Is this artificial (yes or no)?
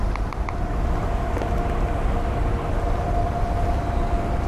no